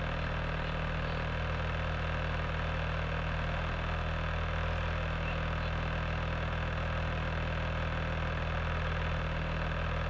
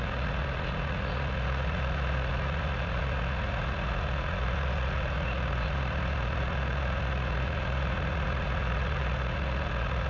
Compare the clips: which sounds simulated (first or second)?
second